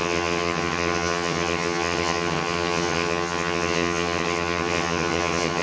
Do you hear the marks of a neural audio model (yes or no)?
yes